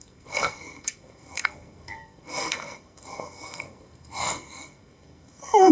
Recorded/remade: remade